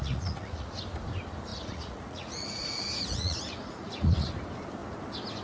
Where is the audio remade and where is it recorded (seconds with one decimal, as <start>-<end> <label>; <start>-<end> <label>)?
0.0-0.7 remade; 0.7-1.5 recorded; 1.5-4.3 remade; 4.3-5.4 recorded